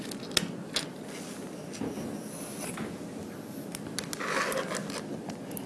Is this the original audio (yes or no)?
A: yes